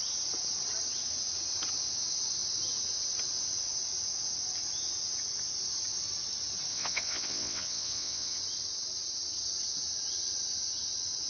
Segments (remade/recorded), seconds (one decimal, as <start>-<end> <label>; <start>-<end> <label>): 0.0-6.7 recorded; 6.7-8.4 remade; 8.4-11.3 recorded